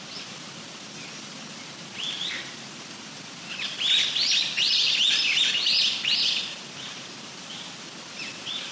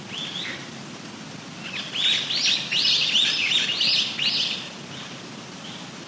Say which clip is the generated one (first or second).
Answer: first